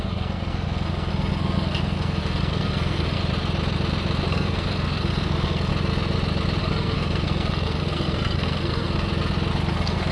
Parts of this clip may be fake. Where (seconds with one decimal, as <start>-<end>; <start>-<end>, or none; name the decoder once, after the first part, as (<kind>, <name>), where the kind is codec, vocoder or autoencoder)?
0.0-3.2 (codec, SNAC); 4.3-5.7; 6.6-9.1; 9.7-10.1